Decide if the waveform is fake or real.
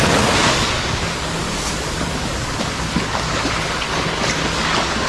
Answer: fake